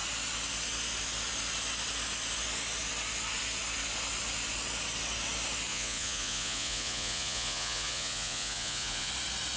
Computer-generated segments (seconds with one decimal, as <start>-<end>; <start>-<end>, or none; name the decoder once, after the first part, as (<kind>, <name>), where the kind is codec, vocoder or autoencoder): 5.7-9.1 (vocoder, Vocos)